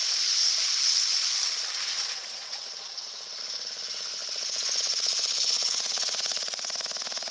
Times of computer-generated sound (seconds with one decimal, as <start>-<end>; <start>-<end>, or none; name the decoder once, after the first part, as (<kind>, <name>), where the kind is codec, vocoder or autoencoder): 1.9-3.4 (vocoder, WaveNeXt)